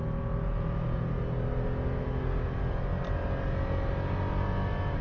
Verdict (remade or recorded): recorded